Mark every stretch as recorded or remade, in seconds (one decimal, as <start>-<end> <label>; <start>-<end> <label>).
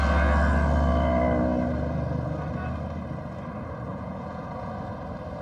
0.0-3.9 recorded; 3.9-4.7 remade; 4.7-5.4 recorded